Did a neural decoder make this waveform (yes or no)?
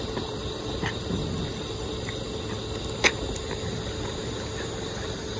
no